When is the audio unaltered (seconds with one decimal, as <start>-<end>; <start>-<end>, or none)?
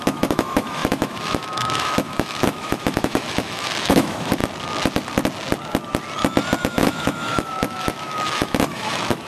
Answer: 4.4-6.6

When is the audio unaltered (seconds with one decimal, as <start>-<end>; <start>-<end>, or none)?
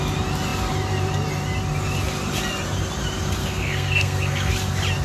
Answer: 0.0-3.4; 4.5-5.0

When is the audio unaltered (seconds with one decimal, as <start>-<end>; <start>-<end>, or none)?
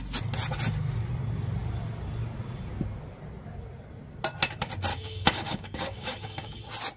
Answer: 0.0-4.9; 6.6-7.0